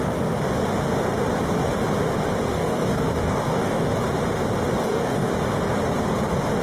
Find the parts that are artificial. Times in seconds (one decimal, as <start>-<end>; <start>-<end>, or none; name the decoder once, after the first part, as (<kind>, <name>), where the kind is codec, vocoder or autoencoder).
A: 2.5-3.9 (codec, DAC); 4.8-5.3